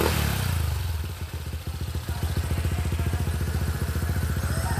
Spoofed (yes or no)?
no